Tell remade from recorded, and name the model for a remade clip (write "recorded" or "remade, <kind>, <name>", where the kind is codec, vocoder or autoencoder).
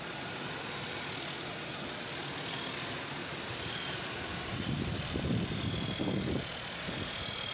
recorded